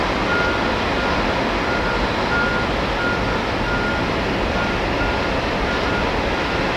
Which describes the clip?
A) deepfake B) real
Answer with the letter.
B